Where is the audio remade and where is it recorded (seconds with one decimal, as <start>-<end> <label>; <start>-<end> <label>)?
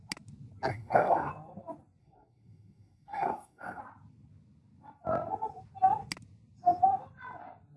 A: 0.0-0.7 recorded; 0.7-1.3 remade; 1.3-2.0 recorded; 2.0-3.8 remade; 3.8-7.8 recorded